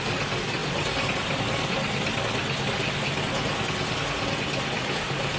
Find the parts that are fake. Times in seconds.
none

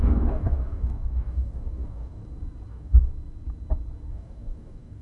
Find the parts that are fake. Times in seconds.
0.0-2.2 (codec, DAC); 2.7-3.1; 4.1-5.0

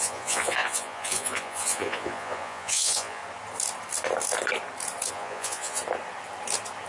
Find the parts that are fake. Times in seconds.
0.0-3.2 (vocoder, Vocos); 5.1-5.8